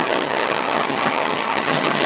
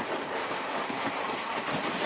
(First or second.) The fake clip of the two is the first